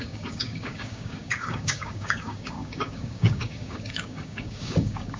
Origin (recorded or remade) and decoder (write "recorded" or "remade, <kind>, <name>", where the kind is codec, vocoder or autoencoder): remade, codec, DAC